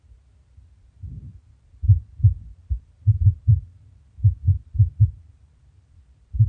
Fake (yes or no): yes